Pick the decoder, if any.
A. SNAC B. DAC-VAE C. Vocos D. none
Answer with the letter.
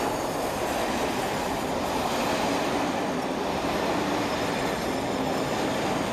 D